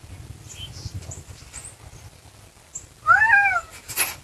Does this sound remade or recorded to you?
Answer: recorded